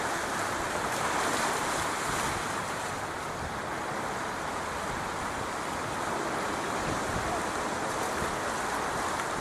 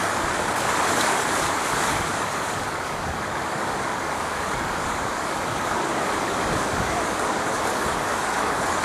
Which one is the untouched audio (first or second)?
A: first